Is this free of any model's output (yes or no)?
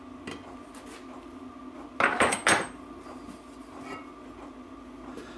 yes